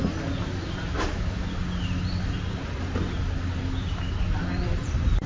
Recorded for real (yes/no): yes